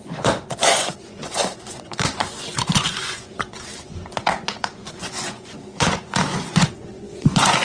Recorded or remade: remade